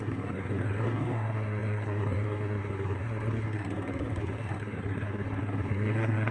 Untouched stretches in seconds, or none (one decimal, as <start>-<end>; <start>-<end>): none